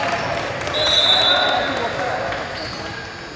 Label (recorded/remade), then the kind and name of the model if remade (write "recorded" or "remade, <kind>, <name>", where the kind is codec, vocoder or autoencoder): recorded